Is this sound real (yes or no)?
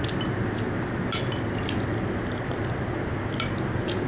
yes